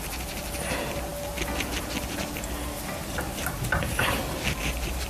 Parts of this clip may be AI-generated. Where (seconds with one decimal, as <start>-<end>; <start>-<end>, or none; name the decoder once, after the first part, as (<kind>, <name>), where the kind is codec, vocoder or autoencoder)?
none